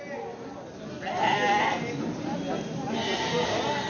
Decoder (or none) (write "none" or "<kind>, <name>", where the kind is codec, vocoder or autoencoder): none